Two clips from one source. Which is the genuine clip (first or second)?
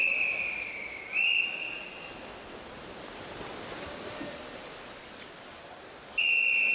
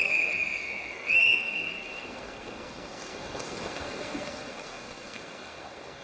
first